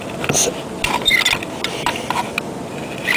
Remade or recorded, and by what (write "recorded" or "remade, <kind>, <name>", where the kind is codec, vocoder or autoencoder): recorded